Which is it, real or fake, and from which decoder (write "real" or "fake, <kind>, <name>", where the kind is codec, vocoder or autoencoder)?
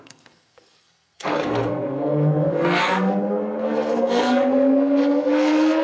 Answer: fake, codec, SNAC